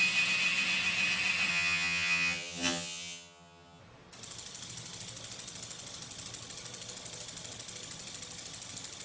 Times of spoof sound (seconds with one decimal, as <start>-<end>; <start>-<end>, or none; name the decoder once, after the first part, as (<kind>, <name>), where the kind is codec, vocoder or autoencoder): 1.5-3.8 (vocoder, HiFi-GAN)